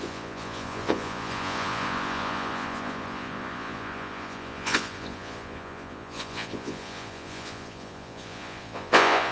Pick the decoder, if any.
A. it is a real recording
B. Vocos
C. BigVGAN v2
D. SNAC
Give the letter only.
B